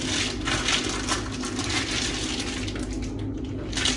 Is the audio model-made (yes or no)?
no